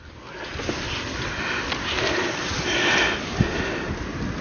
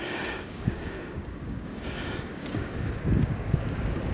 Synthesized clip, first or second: second